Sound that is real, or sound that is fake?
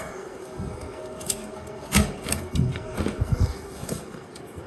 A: fake